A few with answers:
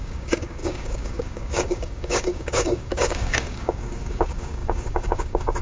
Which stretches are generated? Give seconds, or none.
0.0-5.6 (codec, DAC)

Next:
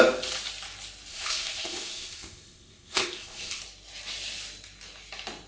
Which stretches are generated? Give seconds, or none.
1.1-3.6 (codec, ZipCodec)

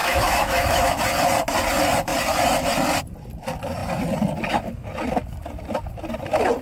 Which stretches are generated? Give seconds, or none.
0.0-1.0 (autoencoder, DAC-VAE)

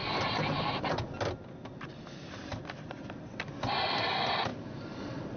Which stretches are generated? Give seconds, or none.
2.5-3.4 (vocoder, BigVGAN v2); 4.5-5.0

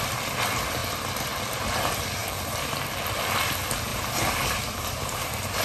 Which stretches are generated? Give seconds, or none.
2.2-2.7 (vocoder, BigVGAN v2); 3.9-5.6

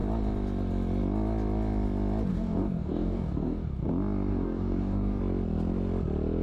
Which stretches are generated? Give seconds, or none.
2.3-3.9 (codec, DAC); 4.3-5.2

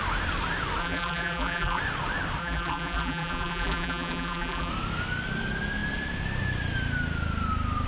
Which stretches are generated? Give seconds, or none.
0.8-1.8 (vocoder, BigVGAN v2); 2.4-4.7

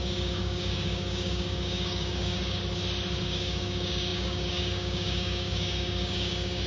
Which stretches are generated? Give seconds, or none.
0.0-2.6 (codec, DAC); 3.2-6.7